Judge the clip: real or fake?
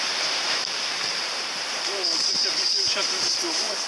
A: fake